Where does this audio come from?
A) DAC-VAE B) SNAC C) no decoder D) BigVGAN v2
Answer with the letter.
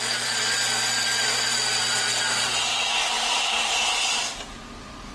C